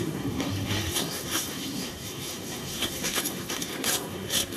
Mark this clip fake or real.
fake